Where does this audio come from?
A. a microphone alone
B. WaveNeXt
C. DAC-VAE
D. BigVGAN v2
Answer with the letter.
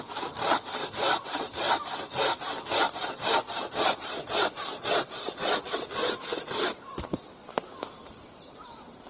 D